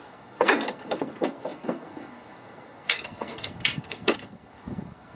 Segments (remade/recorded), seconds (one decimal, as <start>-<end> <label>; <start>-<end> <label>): 0.0-5.2 remade